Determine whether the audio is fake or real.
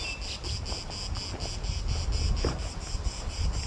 real